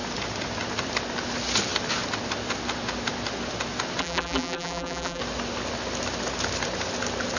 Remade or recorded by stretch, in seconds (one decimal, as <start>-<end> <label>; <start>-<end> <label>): 0.0-4.0 recorded; 4.0-5.2 remade; 5.2-7.4 recorded